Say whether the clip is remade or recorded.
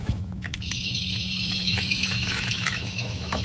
remade